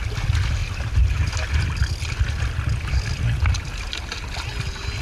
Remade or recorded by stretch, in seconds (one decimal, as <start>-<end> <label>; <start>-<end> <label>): 0.0-5.0 recorded

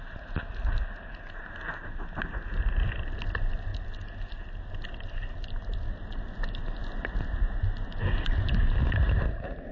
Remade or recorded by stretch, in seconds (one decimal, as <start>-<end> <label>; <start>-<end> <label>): 0.0-9.7 recorded

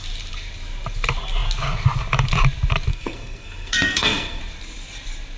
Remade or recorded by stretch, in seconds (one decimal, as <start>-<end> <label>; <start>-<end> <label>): 0.0-2.9 recorded; 2.9-4.4 remade; 4.4-5.4 recorded

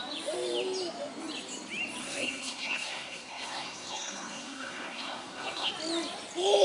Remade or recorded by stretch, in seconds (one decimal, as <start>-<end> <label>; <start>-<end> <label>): 0.0-2.0 recorded; 2.0-5.7 remade; 5.7-6.6 recorded

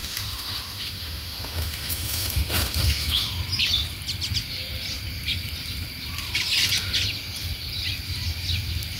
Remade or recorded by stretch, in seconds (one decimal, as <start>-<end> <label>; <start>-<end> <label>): 0.0-3.3 remade; 3.3-9.0 recorded